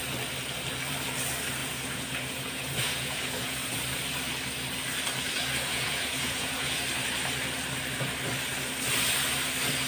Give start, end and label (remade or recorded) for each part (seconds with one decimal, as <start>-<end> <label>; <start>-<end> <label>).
0.0-1.6 recorded; 1.6-3.8 remade; 3.8-5.7 recorded; 5.7-6.8 remade; 6.8-9.9 recorded